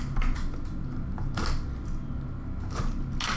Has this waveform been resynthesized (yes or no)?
no